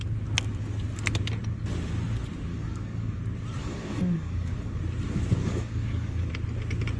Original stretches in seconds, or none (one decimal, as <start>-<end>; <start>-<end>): 0.0-2.5; 3.2-3.6; 4.8-5.4; 6.3-7.0